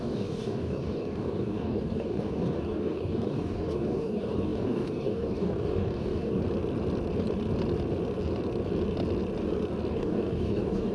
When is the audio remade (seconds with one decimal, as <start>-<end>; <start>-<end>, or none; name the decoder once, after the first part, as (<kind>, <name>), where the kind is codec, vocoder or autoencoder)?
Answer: 0.0-6.4 (codec, DAC); 9.9-10.9

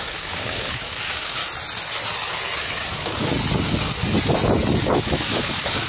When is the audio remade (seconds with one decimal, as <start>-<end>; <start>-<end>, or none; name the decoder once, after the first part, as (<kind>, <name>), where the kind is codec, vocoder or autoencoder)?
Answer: 0.0-1.4 (codec, DAC); 2.9-3.3; 4.8-5.9

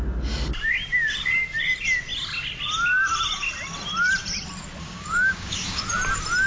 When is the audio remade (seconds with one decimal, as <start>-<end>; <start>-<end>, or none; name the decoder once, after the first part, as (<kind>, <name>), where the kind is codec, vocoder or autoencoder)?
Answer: 4.8-5.8 (codec, DAC)

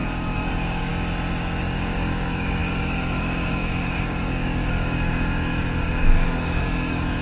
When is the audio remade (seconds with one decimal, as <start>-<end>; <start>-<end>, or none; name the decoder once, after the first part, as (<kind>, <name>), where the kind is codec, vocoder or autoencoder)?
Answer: 0.0-0.9 (codec, DAC); 1.6-7.2

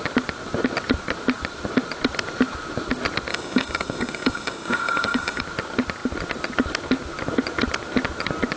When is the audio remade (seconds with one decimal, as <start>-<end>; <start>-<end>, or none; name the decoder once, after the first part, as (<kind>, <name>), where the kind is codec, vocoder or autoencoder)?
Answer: 3.3-5.4 (codec, DAC)

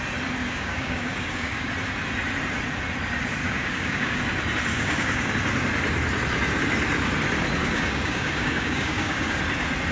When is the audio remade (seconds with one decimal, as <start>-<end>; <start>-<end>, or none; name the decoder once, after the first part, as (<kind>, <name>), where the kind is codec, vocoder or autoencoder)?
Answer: 0.4-1.7 (codec, DAC); 3.4-4.2; 4.7-5.3; 7.6-9.4